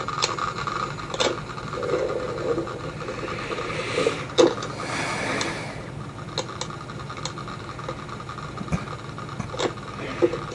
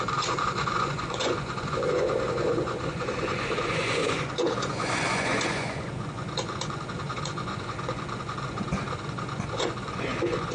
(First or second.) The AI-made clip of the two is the second